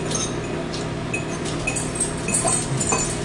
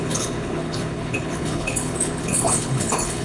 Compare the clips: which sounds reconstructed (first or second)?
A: second